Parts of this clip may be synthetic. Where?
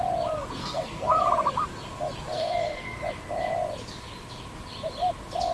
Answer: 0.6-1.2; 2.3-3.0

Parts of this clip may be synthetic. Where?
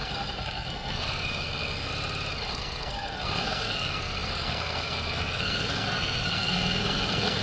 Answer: 0.0-1.9; 2.5-7.4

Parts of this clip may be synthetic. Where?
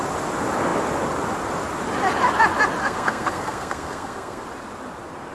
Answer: 2.8-4.4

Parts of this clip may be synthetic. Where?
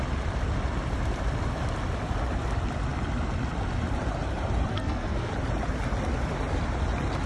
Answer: 4.7-5.3